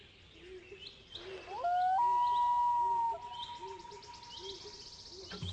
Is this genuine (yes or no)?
yes